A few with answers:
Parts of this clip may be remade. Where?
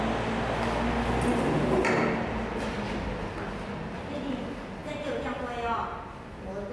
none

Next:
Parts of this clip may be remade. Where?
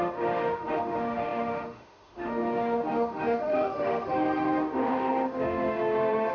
0.0-6.3 (autoencoder, DAC-VAE)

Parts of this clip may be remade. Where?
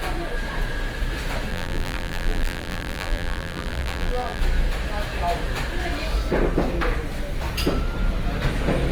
1.5-4.4 (vocoder, BigVGAN v2)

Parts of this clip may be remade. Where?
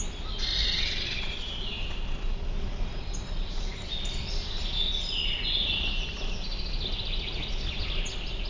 0.5-1.7 (vocoder, Vocos)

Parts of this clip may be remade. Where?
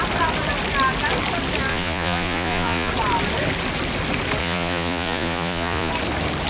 1.7-2.9 (vocoder, Vocos); 4.4-5.9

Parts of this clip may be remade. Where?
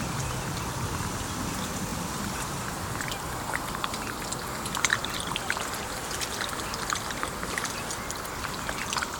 none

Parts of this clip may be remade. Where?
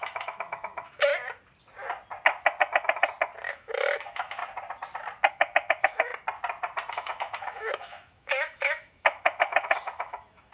0.0-1.1 (autoencoder, DAC-VAE); 3.5-4.4; 5.3-6.1; 6.9-10.5